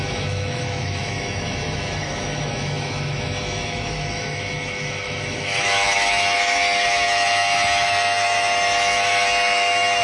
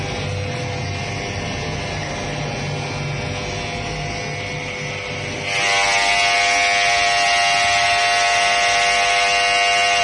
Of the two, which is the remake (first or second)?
first